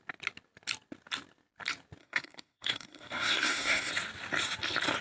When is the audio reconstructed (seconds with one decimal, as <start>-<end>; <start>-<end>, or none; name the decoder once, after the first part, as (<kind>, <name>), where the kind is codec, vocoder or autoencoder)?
2.0-3.9 (codec, SNAC)